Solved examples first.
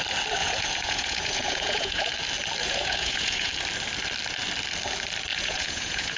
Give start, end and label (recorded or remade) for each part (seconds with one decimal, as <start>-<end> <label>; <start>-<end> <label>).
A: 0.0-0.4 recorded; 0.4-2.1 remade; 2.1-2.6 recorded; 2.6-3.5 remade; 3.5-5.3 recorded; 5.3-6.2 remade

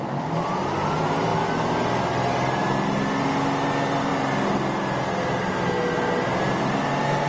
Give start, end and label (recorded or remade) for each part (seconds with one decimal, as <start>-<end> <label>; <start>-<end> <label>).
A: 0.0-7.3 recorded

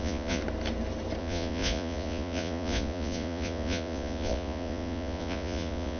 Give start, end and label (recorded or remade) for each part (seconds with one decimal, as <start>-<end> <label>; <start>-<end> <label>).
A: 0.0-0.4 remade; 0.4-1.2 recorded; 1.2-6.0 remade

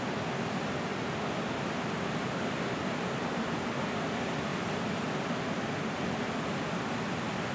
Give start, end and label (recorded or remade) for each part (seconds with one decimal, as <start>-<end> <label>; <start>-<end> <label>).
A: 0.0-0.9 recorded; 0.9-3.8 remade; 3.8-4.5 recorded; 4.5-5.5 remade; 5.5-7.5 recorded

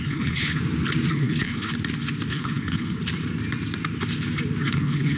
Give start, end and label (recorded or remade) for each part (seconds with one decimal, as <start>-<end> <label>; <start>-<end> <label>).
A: 0.0-0.6 remade; 0.6-1.1 recorded; 1.1-1.7 remade; 1.7-2.3 recorded; 2.3-3.0 remade; 3.0-4.6 recorded; 4.6-5.2 remade

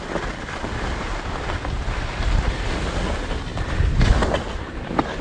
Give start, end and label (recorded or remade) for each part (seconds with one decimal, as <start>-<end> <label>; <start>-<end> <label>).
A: 0.0-3.5 recorded; 3.5-4.1 remade; 4.1-5.2 recorded